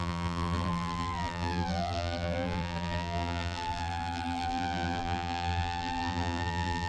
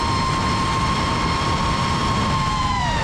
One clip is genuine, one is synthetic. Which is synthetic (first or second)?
first